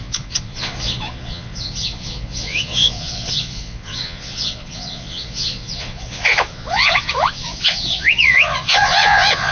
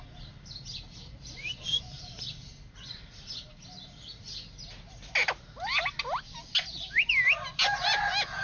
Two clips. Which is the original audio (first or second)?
second